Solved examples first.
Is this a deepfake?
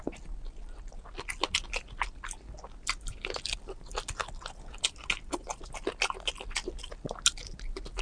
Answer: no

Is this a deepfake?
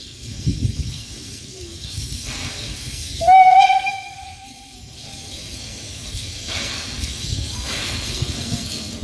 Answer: yes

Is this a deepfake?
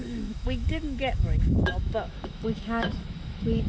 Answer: yes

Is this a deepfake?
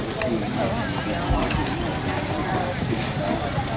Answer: no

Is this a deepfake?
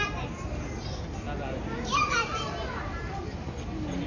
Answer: no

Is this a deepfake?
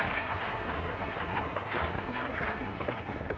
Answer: yes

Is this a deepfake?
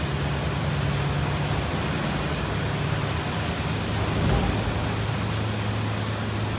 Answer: no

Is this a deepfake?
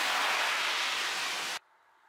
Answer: no